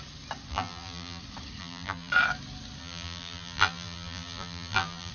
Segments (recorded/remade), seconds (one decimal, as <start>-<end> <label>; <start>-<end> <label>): 0.0-0.5 recorded; 0.5-1.2 remade; 1.2-1.6 recorded; 1.6-2.1 remade; 2.1-2.8 recorded; 2.8-5.1 remade